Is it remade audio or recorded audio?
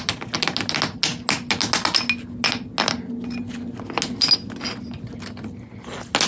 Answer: recorded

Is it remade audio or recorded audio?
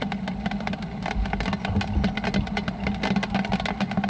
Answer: recorded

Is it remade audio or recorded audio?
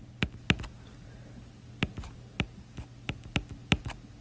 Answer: recorded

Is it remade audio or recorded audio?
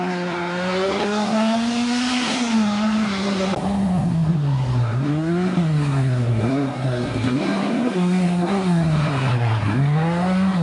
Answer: remade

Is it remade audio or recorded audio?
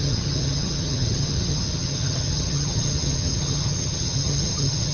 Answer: remade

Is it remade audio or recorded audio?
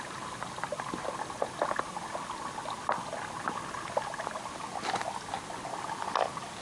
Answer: recorded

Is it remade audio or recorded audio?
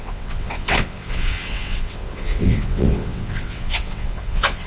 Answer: remade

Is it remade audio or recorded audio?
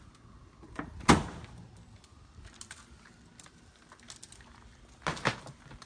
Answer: recorded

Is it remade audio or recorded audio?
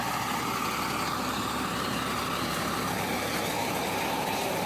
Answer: recorded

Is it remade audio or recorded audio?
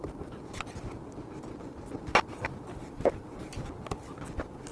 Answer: recorded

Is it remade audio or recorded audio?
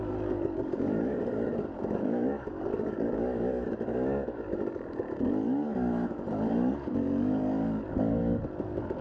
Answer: remade